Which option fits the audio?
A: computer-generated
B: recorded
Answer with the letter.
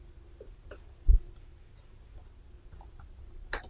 B